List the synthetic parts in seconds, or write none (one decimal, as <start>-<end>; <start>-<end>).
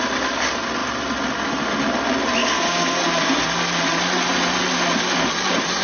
2.4-3.0